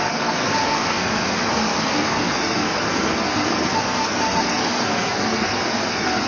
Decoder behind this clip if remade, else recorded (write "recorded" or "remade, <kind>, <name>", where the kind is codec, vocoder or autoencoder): remade, codec, SNAC